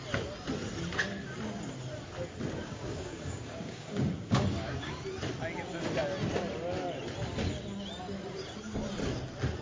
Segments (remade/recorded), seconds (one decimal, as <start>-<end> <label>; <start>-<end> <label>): 0.0-2.6 recorded; 2.6-5.0 remade; 5.0-9.6 recorded